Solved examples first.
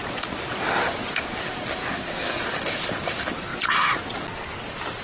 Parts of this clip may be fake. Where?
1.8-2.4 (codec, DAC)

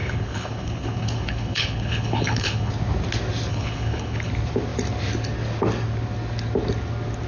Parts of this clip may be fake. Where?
0.0-2.7 (codec, HILCodec); 3.5-4.3

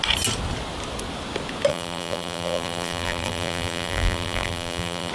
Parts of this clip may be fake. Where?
1.7-5.1 (vocoder, BigVGAN v2)

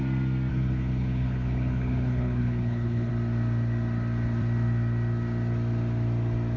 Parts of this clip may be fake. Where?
0.5-3.1 (codec, HILCodec)

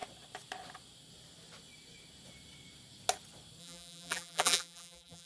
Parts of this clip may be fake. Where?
3.6-5.3 (vocoder, BigVGAN v2)

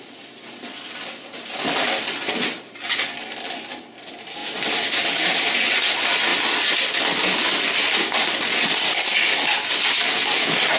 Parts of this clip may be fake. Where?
none

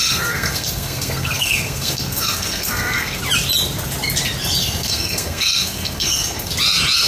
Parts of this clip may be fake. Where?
0.0-3.2 (codec, SNAC); 4.6-6.5